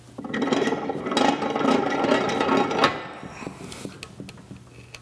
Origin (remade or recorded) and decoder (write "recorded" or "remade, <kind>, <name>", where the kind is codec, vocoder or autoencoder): recorded